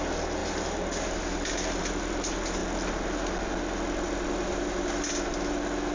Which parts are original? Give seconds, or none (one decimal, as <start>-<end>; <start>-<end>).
0.0-5.9